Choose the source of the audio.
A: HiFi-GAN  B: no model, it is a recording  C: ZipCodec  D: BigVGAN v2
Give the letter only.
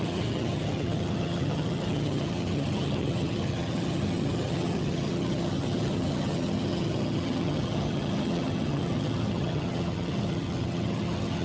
A